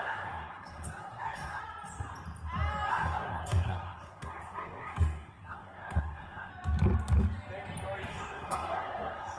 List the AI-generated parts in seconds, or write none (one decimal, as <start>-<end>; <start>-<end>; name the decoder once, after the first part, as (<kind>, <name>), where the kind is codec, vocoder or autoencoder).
0.0-1.6 (codec, SNAC); 2.9-6.5; 8.1-9.4